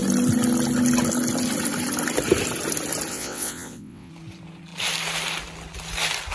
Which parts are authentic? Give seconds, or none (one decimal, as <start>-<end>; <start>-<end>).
0.0-3.1; 4.1-6.3